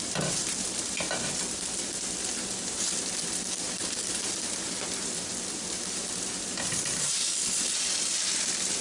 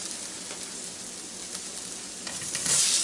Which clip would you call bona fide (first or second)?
second